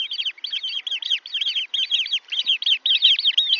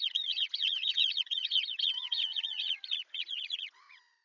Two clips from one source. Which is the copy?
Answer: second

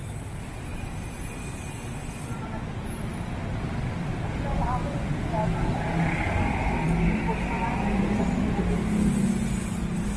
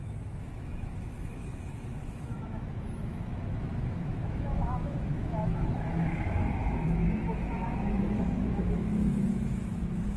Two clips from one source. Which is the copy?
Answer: second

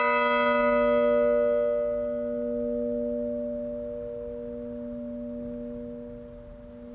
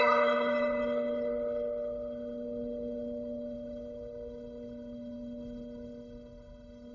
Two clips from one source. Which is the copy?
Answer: second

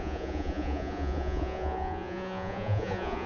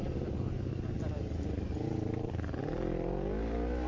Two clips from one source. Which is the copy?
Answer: first